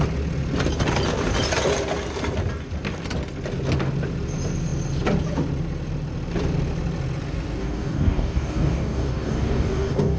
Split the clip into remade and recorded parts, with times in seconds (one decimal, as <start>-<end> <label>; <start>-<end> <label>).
0.0-7.6 recorded; 7.6-10.2 remade